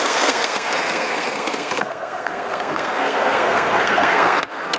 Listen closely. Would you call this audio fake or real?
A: fake